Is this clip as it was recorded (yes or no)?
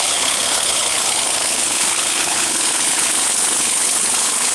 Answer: no